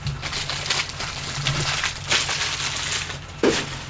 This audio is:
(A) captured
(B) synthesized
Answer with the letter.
A